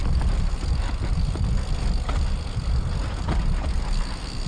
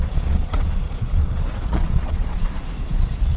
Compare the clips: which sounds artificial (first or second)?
second